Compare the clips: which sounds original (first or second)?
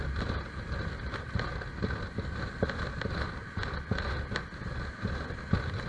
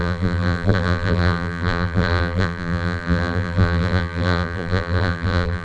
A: first